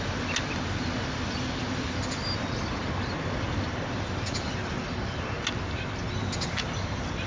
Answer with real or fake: real